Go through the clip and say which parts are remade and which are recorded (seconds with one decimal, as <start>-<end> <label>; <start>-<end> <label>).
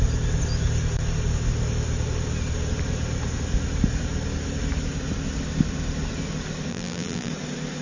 0.0-6.7 recorded; 6.7-7.3 remade; 7.3-7.8 recorded